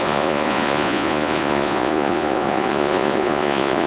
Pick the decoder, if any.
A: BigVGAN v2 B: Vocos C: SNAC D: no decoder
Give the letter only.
B